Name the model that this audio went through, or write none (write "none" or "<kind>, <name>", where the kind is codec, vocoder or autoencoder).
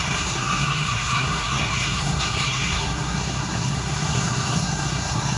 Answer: codec, SNAC